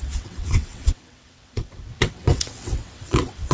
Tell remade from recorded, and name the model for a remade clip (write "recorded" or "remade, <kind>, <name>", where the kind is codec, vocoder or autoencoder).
remade, vocoder, WaveNeXt